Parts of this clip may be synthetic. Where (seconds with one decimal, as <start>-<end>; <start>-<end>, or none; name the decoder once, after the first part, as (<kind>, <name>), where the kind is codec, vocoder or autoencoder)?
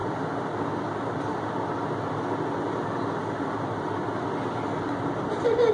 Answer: none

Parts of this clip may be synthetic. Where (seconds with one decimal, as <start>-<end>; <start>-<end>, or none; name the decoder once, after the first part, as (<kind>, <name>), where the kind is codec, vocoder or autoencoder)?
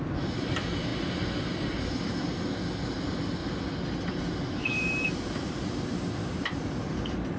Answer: 0.0-0.9 (vocoder, BigVGAN v2); 3.0-3.4; 4.5-7.4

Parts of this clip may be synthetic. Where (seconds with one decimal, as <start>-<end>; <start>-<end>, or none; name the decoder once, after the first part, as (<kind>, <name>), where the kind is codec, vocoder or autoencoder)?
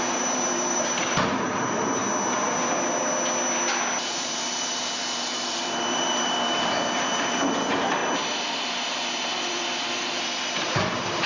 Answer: 0.0-2.0 (vocoder, BigVGAN v2); 4.0-8.0; 8.9-11.3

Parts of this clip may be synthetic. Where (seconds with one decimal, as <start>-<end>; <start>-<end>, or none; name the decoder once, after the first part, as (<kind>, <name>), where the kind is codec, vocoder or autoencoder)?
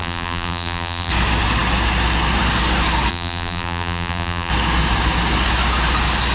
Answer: 0.0-1.1 (vocoder, BigVGAN v2); 3.1-4.5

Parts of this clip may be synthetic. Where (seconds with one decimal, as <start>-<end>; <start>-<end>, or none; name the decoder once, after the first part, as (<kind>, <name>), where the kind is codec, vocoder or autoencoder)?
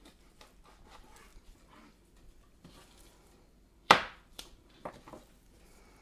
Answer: 1.3-4.9 (vocoder, BigVGAN v2)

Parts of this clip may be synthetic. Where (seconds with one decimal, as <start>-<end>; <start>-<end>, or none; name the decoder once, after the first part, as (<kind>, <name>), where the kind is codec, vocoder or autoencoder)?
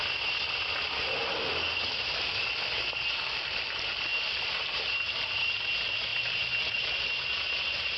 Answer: 4.1-5.6 (vocoder, BigVGAN v2); 6.1-6.9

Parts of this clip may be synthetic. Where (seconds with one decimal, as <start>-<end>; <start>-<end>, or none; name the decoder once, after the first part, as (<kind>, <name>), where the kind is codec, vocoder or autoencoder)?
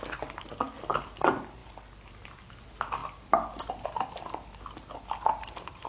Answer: none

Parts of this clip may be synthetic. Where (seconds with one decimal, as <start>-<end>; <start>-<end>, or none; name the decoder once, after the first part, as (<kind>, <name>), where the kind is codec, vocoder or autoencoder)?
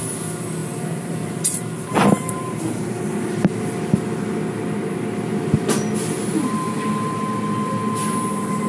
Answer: 0.6-3.7 (vocoder, BigVGAN v2)